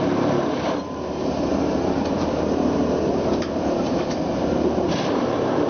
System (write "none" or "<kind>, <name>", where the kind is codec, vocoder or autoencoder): vocoder, BigVGAN v2